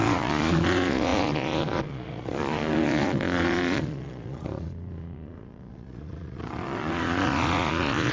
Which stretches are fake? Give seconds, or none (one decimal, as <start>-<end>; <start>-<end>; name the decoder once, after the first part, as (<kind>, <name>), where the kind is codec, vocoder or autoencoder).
0.0-8.1 (vocoder, Vocos)